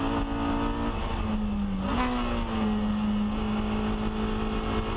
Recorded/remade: recorded